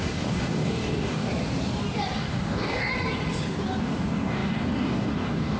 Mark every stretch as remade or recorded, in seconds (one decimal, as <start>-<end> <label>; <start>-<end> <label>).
0.0-1.3 remade; 1.3-2.2 recorded; 2.2-2.9 remade; 2.9-3.8 recorded; 3.8-5.6 remade